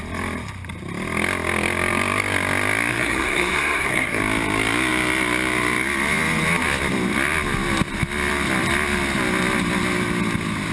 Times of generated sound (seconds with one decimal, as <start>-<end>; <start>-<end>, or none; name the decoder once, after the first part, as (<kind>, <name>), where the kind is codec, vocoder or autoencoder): 2.9-4.2 (codec, SNAC)